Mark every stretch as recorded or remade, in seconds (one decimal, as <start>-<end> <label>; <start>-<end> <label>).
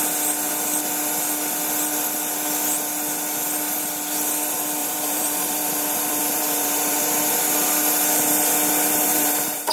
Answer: 0.0-4.8 recorded; 4.8-7.0 remade; 7.0-9.1 recorded; 9.1-9.7 remade